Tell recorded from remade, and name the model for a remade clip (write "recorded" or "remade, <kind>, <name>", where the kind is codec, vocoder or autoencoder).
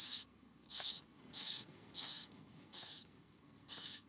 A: remade, codec, SNAC